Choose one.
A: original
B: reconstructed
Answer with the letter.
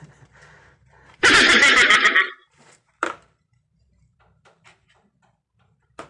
B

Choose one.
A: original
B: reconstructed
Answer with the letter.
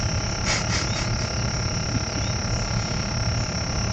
A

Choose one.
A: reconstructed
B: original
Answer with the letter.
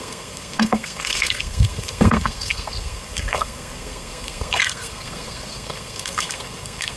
A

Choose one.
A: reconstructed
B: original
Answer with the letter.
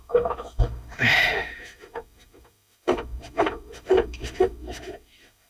A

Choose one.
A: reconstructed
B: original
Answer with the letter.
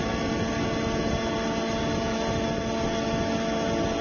B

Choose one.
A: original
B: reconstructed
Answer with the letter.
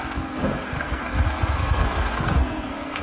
B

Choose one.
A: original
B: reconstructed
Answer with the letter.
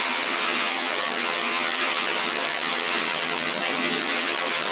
B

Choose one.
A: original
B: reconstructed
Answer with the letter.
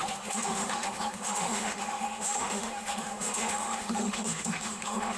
B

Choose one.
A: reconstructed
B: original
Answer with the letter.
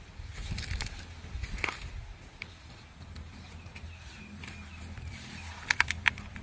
B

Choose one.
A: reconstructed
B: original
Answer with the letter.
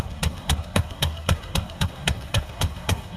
A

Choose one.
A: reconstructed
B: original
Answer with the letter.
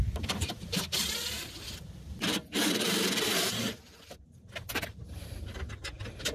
A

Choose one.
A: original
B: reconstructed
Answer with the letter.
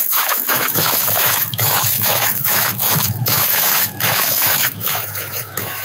B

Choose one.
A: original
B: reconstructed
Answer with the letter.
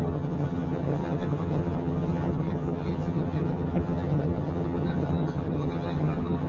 B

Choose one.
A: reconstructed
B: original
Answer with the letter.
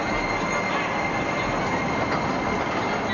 B